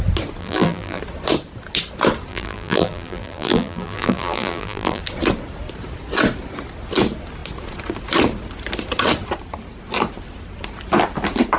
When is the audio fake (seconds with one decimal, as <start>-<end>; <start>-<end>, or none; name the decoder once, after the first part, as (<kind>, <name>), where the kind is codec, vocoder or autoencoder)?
0.4-1.0 (vocoder, BigVGAN v2); 2.3-5.0